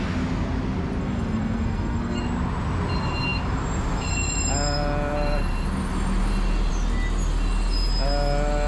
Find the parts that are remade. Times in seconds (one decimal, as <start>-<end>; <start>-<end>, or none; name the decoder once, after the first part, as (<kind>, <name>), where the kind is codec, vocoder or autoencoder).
1.0-2.2 (codec, SNAC)